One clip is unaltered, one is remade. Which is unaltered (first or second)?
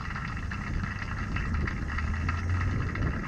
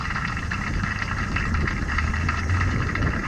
first